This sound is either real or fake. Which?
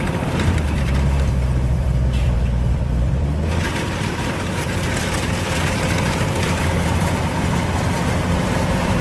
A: fake